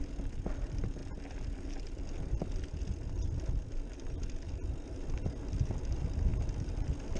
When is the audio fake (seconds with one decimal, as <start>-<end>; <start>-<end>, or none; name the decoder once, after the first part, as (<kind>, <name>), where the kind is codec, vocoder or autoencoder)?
none